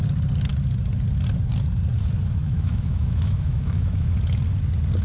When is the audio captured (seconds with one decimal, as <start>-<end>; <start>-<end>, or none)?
0.0-2.4; 4.1-5.0